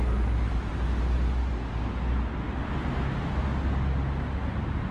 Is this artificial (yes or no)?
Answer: no